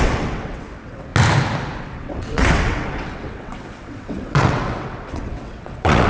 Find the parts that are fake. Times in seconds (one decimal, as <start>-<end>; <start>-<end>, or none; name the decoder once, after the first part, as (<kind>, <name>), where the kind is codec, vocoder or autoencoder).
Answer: 0.0-1.1 (vocoder, WaveNeXt); 1.8-6.1